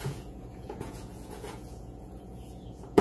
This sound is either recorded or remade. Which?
remade